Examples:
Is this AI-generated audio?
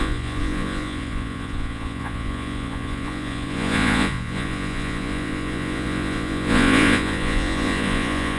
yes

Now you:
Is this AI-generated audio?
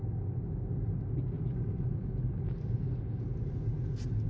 no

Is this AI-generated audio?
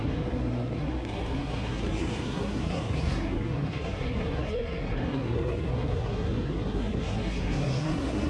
yes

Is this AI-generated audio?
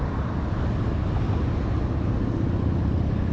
no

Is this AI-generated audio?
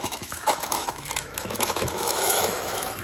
yes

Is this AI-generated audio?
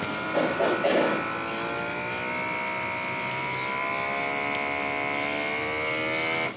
no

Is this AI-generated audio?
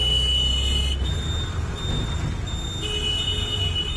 no